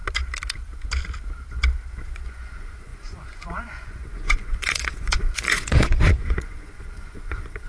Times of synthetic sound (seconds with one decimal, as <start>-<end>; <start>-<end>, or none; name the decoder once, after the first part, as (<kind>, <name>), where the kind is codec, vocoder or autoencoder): 1.9-7.7 (vocoder, Vocos)